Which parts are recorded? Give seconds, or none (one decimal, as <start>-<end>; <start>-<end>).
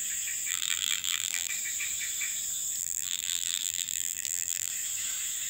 0.0-0.5; 1.5-2.8; 4.7-5.5